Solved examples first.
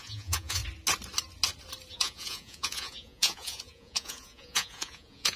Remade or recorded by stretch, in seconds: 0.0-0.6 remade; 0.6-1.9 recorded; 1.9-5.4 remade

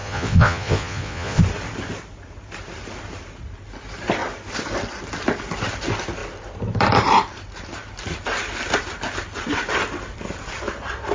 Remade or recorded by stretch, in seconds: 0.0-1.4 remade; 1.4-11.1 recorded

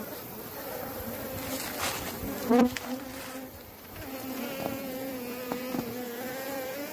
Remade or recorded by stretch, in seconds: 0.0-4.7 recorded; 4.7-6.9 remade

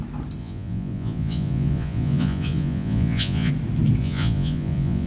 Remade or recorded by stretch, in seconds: 0.0-0.4 recorded; 0.4-3.5 remade; 3.5-4.0 recorded; 4.0-5.1 remade

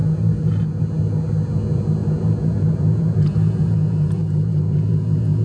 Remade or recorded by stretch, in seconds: 0.0-0.8 remade; 0.8-2.0 recorded; 2.0-5.4 remade

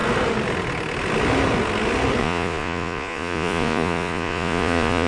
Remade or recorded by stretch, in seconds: 0.0-2.2 recorded; 2.2-5.1 remade

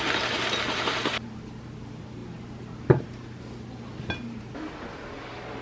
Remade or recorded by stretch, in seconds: 0.0-5.6 recorded